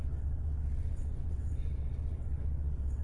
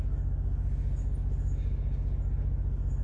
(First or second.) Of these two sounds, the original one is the second